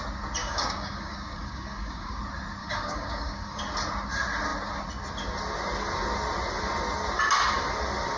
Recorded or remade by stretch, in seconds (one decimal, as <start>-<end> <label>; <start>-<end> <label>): 0.0-0.4 recorded; 0.4-2.2 remade; 2.2-2.6 recorded; 2.6-3.6 remade; 3.6-8.2 recorded